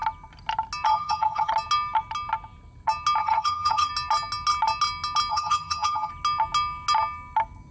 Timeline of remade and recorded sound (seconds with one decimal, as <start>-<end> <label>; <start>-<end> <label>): 0.0-0.9 recorded; 0.9-1.5 remade; 1.5-3.2 recorded; 3.2-3.9 remade; 3.9-5.3 recorded; 5.3-6.1 remade; 6.1-7.7 recorded